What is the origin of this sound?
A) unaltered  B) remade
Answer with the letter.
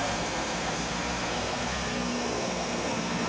B